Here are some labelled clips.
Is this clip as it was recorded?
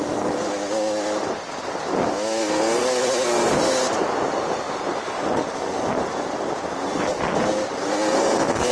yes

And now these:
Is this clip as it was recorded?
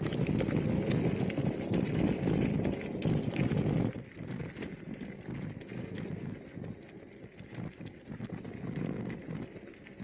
yes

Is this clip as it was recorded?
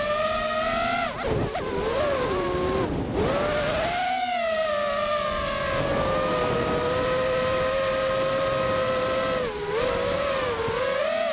yes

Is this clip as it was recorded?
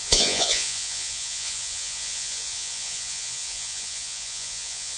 no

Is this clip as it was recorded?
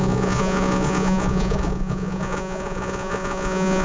no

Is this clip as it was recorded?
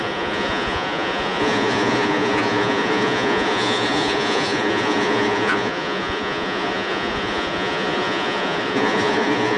no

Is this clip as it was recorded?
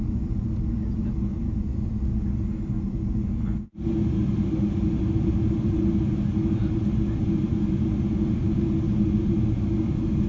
yes